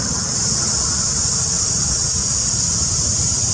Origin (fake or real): real